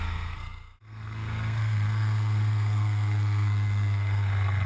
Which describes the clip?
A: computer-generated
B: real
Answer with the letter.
A